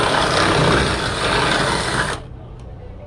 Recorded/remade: recorded